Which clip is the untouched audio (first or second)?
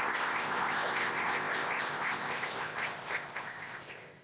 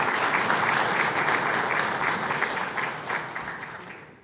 second